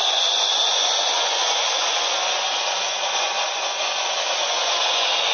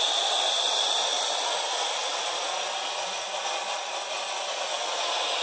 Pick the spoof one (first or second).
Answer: first